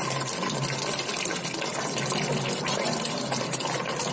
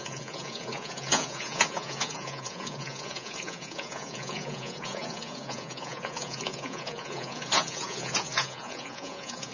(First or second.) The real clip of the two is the first